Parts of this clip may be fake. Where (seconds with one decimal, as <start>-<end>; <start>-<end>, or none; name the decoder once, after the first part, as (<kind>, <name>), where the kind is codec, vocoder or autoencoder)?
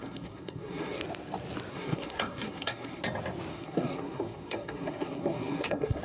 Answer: 0.0-1.0 (codec, SNAC); 1.7-3.0; 3.5-6.0